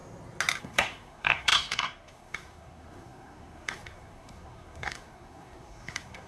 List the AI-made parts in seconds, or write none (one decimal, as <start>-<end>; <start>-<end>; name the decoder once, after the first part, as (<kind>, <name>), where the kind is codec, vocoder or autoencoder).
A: 0.6-6.3 (codec, SNAC)

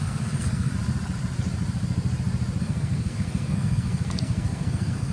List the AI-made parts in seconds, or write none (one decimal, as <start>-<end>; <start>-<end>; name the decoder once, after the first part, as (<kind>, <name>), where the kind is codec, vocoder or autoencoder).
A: 0.0-0.7 (codec, SNAC); 2.6-5.1